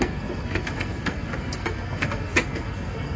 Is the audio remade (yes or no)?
yes